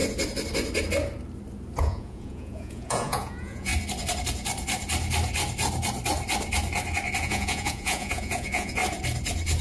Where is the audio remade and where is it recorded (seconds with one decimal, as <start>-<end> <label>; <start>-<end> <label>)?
0.0-1.8 recorded; 1.8-3.7 remade; 3.7-7.2 recorded; 7.2-8.8 remade; 8.8-9.6 recorded